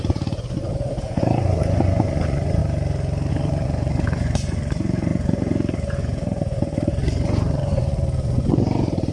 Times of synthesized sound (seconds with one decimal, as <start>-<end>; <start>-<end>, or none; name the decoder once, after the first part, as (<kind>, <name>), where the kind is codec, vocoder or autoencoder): 0.0-2.6 (vocoder, Vocos); 3.3-9.1